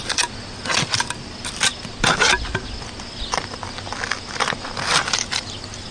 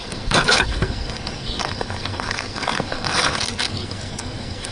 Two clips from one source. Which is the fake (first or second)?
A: second